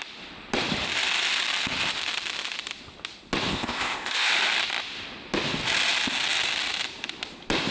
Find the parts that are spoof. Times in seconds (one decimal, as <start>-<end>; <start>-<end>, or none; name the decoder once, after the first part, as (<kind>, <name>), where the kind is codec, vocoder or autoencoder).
3.5-4.3 (codec, ZipCodec)